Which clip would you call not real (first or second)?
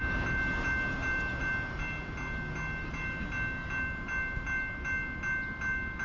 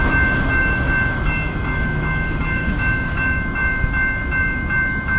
second